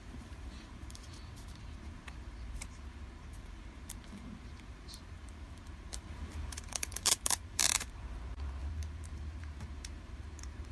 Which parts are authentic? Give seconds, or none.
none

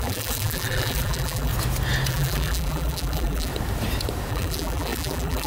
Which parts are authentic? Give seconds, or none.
1.5-2.1; 3.5-4.3

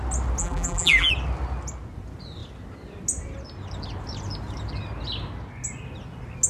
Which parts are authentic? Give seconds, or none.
0.0-0.4; 1.1-6.5

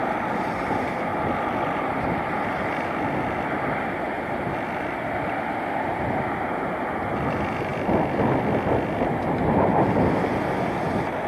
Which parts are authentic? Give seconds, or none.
0.6-1.1; 2.3-11.3

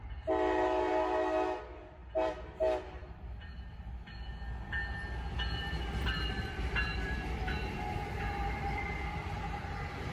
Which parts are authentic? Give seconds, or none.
0.0-2.0; 2.6-3.0; 4.3-6.0; 9.2-10.1

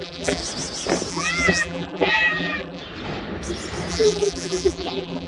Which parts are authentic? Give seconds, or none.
0.4-1.1; 2.8-3.9

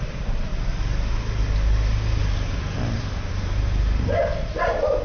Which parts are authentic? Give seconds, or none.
0.5-3.3

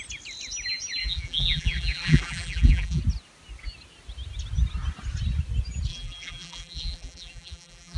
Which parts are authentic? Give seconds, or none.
0.0-1.0; 3.0-5.9